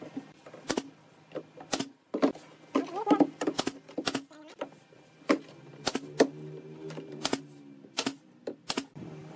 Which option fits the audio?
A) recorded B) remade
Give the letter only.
A